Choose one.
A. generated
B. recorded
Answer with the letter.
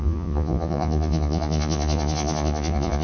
A